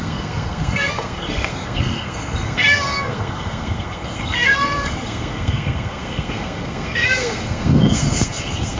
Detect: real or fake fake